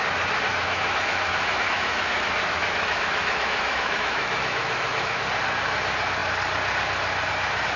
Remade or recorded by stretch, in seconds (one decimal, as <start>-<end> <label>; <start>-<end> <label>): 0.0-0.5 recorded; 0.5-5.2 remade; 5.2-7.8 recorded